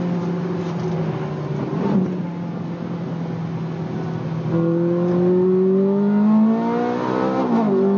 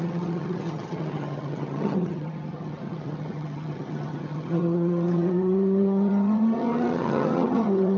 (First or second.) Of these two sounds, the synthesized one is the second